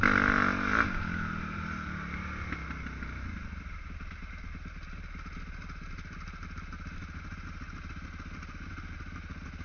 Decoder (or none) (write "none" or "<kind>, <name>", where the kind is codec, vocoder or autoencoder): none